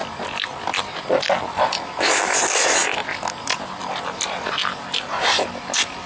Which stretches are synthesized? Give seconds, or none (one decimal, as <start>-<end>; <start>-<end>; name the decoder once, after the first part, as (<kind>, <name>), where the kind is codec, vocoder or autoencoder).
none